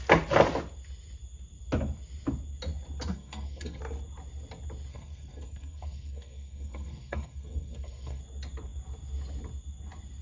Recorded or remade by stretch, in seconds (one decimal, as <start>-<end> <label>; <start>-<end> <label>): 0.0-3.1 recorded; 3.1-3.8 remade; 3.8-4.9 recorded; 4.9-8.2 remade; 8.2-10.2 recorded